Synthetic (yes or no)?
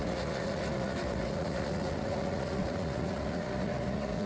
yes